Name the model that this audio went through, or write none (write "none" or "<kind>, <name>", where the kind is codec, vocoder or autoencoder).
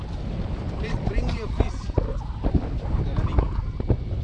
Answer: none